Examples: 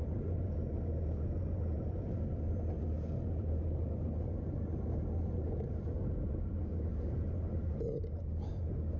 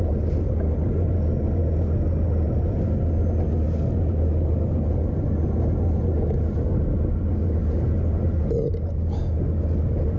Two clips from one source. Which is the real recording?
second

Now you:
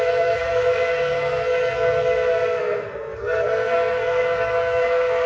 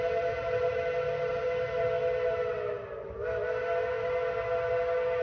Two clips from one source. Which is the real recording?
second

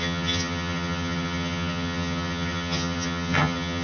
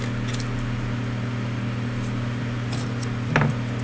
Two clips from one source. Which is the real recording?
second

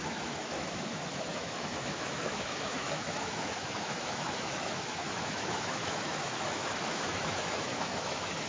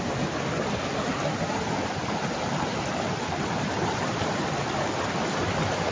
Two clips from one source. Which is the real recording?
second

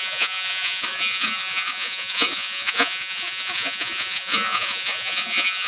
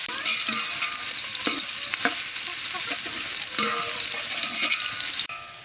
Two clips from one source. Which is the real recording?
second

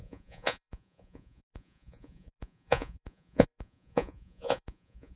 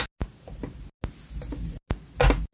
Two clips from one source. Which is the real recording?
second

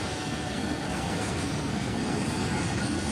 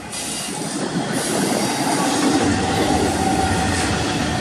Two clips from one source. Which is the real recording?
second